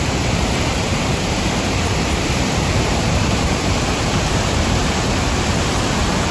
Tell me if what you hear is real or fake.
fake